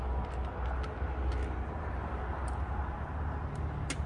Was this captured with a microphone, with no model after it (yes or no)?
yes